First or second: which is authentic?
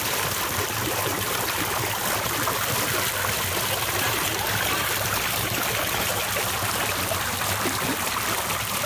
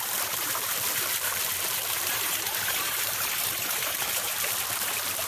first